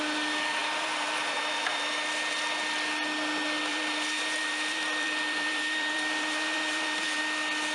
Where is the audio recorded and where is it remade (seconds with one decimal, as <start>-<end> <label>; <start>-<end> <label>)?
0.0-0.6 recorded; 0.6-2.3 remade; 2.3-3.7 recorded; 3.7-7.2 remade; 7.2-7.7 recorded